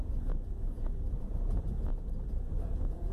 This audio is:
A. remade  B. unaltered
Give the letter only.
A